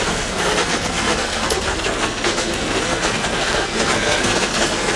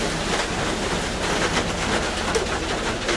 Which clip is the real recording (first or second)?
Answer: second